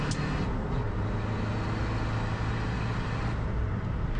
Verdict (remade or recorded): recorded